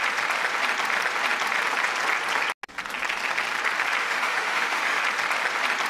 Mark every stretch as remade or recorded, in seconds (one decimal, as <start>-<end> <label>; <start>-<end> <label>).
0.0-4.0 recorded; 4.0-5.0 remade; 5.0-5.9 recorded